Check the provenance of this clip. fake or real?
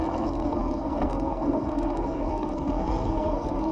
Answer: fake